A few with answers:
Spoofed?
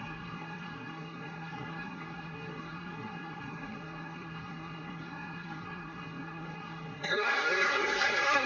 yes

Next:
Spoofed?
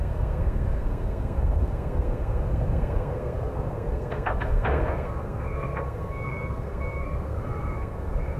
yes